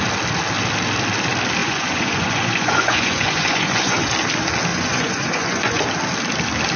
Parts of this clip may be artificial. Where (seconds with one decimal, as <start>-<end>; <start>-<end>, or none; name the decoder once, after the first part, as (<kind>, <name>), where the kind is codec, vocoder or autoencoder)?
1.6-4.1 (vocoder, Vocos); 4.7-5.8